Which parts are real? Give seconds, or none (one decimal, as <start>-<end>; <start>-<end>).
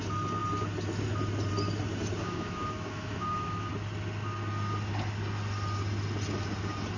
0.0-2.2; 3.7-7.0